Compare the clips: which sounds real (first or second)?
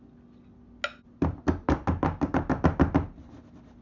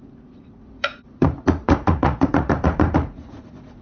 first